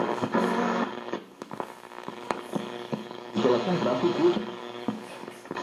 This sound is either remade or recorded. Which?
remade